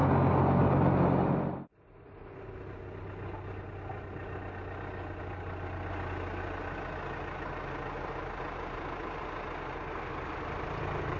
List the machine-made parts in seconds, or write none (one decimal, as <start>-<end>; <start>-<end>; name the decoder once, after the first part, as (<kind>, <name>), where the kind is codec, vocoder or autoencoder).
none